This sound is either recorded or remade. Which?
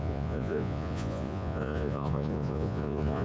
remade